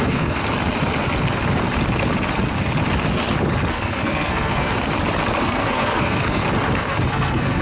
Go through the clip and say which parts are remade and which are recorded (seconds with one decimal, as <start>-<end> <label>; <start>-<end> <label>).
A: 0.0-0.4 remade; 0.4-3.7 recorded; 3.7-4.7 remade; 4.7-5.4 recorded; 5.4-6.4 remade; 6.4-7.1 recorded; 7.1-7.6 remade